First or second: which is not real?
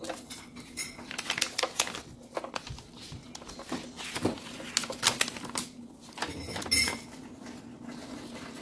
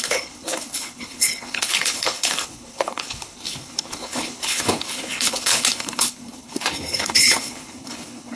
second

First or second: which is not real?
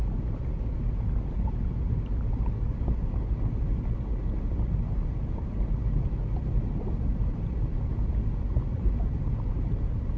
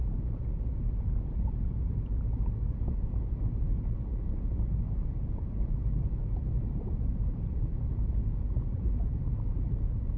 second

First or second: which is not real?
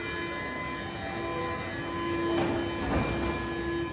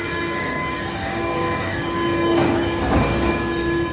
second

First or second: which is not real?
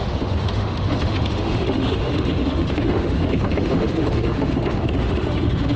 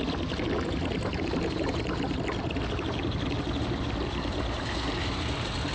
first